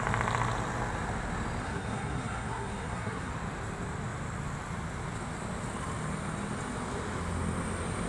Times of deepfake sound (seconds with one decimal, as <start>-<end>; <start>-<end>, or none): 1.6-3.3